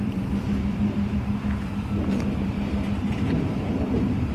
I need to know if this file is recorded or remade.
remade